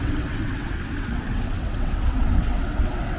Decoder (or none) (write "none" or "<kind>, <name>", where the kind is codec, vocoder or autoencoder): vocoder, WaveNeXt